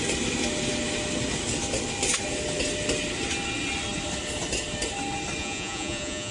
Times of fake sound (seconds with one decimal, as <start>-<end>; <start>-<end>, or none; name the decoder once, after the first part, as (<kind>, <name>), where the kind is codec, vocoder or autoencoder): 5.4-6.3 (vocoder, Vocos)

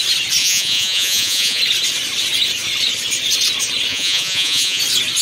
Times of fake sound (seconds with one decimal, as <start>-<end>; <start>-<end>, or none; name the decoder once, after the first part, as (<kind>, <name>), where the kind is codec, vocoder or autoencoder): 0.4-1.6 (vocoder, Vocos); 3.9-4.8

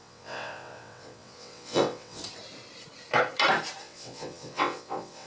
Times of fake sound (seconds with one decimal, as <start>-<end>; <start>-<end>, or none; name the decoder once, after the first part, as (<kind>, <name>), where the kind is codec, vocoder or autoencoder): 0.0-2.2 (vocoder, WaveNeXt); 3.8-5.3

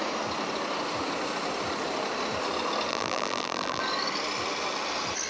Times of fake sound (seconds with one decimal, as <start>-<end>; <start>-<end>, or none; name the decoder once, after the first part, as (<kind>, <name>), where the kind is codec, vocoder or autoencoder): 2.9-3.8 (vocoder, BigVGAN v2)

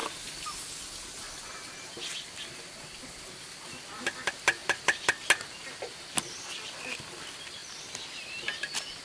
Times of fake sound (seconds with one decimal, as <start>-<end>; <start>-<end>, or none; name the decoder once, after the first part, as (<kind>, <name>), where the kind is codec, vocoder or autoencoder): 4.6-5.1 (vocoder, BigVGAN v2)

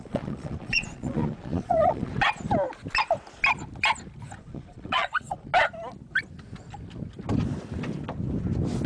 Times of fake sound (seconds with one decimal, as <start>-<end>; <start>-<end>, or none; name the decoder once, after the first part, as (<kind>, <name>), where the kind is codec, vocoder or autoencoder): 0.0-2.1 (vocoder, Vocos); 4.4-5.5

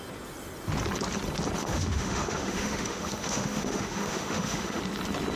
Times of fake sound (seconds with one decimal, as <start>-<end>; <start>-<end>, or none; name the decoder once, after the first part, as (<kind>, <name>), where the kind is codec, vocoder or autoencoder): 1.6-4.8 (autoencoder, DAC-VAE)

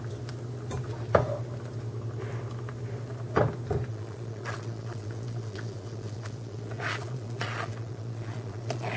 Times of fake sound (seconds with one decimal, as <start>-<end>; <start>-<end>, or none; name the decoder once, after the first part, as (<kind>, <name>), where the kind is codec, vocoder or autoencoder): 3.9-9.0 (vocoder, Vocos)